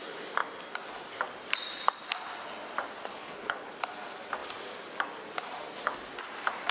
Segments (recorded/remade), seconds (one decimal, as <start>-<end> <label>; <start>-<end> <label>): 0.0-3.1 recorded; 3.1-3.7 remade; 3.7-6.7 recorded